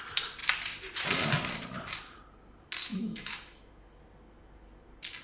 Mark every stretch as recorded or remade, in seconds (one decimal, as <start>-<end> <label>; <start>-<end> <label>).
0.0-2.9 recorded; 2.9-3.8 remade; 3.8-5.2 recorded